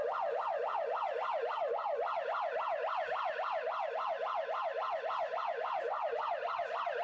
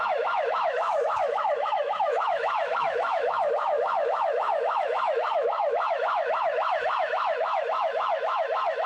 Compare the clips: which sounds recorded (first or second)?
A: first